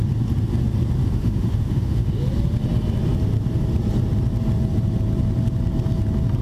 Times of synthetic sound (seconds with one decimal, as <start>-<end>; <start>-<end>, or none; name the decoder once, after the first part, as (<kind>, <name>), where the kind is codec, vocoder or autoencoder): 1.0-2.1 (autoencoder, DAC-VAE)